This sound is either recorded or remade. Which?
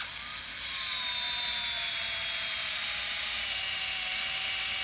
recorded